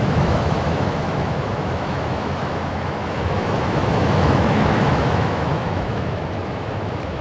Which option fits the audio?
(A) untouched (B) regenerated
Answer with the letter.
B